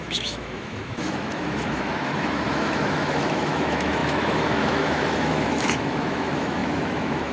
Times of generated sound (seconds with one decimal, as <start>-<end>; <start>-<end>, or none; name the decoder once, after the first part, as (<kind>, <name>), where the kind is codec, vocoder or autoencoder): 0.0-7.3 (autoencoder, DAC-VAE)